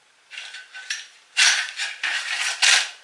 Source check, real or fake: real